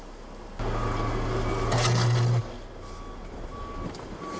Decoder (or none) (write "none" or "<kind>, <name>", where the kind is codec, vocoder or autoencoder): none